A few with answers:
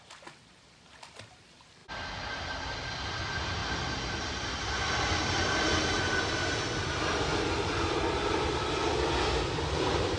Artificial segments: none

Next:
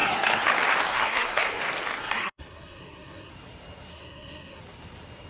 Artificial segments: 0.0-0.5 (codec, SNAC); 0.9-1.6; 2.0-3.3; 3.9-4.6

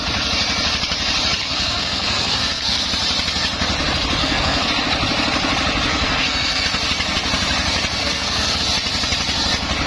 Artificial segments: 1.4-2.9 (codec, SNAC); 4.2-4.7; 5.9-6.6; 8.0-8.6

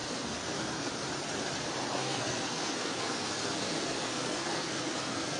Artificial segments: 0.0-0.9 (codec, SNAC); 1.9-5.4

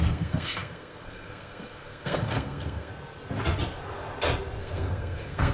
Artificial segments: 0.0-2.9 (codec, SNAC); 4.6-5.5

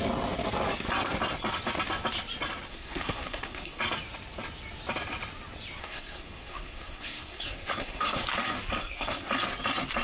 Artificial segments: 2.7-3.8 (codec, SNAC); 5.8-8.2; 8.8-9.3

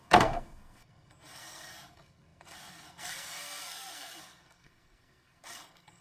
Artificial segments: 0.0-6.0 (codec, SNAC)